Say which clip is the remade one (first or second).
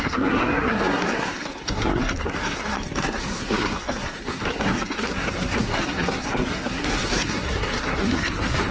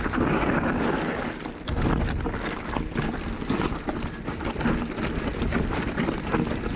first